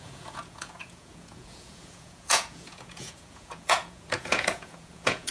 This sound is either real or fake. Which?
fake